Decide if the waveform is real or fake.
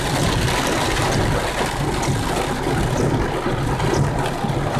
real